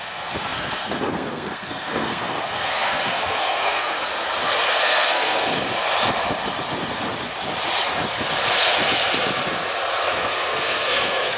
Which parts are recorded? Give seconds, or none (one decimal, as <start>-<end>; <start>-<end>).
4.1-4.7; 5.5-10.1